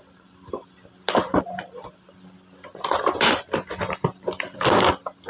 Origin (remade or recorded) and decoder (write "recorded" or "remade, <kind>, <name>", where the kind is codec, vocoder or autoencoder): recorded